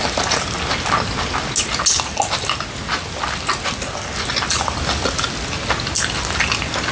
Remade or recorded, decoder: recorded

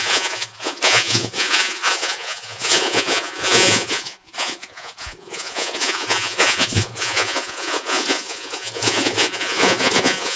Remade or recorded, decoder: remade, vocoder, Vocos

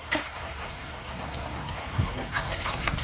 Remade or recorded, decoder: remade, codec, SNAC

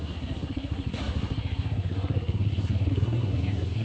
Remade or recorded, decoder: remade, codec, SNAC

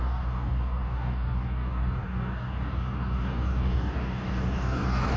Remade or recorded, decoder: remade, codec, DAC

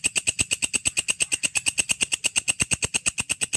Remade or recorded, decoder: recorded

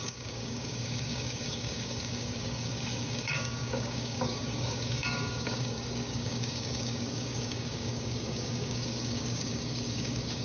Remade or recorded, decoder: remade, codec, DAC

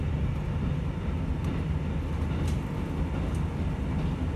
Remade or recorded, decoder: recorded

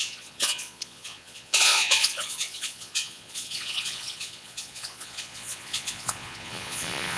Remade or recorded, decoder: remade, vocoder, Vocos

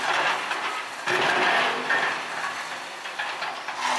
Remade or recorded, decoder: recorded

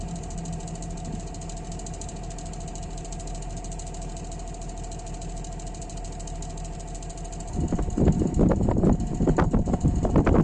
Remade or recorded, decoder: recorded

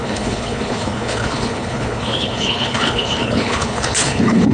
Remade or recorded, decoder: remade, codec, HILCodec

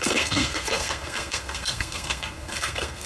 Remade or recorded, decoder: remade, codec, SNAC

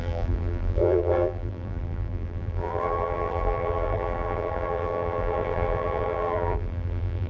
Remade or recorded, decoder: remade, vocoder, BigVGAN v2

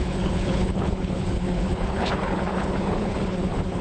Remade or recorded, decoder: remade, codec, HILCodec